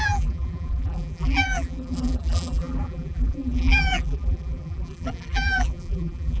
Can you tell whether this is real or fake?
fake